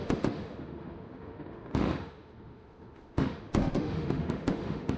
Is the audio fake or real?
fake